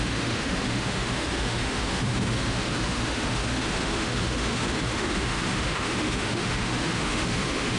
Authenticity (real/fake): fake